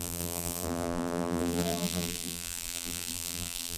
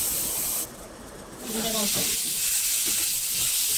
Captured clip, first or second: second